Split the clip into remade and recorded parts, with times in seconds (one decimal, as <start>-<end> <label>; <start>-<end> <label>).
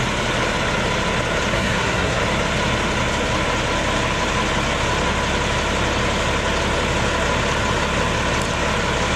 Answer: 0.0-1.5 recorded; 1.5-2.2 remade; 2.2-9.2 recorded